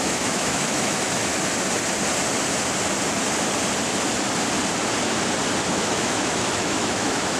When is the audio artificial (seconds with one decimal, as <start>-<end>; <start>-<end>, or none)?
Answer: 0.0-1.3; 5.7-7.4